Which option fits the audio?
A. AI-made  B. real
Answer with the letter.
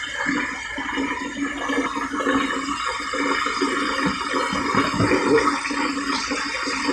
B